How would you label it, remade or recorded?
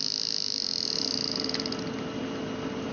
recorded